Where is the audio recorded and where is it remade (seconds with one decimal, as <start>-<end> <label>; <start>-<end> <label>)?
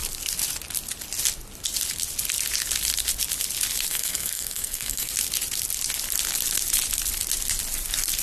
0.0-3.9 recorded; 3.9-5.1 remade; 5.1-8.2 recorded